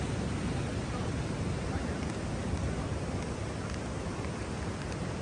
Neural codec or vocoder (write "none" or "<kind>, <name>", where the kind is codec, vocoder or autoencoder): none